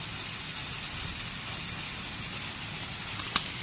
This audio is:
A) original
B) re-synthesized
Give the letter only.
A